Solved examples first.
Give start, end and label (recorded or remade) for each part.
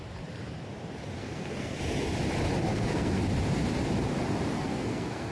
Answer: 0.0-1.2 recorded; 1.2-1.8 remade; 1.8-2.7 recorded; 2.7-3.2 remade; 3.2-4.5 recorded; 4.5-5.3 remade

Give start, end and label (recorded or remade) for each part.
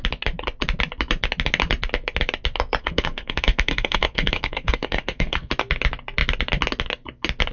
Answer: 0.0-2.8 recorded; 2.8-5.5 remade; 5.5-7.5 recorded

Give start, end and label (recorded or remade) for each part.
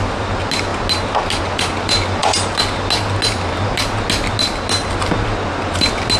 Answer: 0.0-6.2 recorded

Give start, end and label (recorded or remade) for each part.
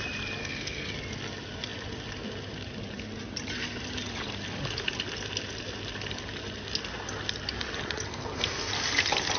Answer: 0.0-0.4 recorded; 0.4-0.9 remade; 0.9-8.1 recorded; 8.1-8.7 remade; 8.7-9.4 recorded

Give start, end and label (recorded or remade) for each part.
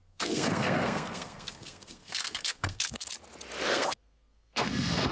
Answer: 0.0-3.1 remade; 3.1-3.7 recorded; 3.7-5.1 remade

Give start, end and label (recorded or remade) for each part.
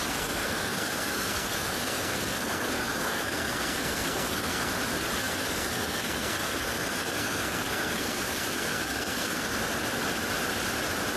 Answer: 0.0-4.7 remade; 4.7-5.2 recorded; 5.2-9.6 remade; 9.6-11.2 recorded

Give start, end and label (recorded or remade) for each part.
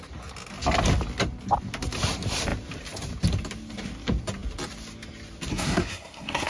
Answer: 0.0-5.5 recorded; 5.5-6.5 remade